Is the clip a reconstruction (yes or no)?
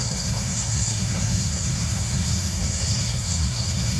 yes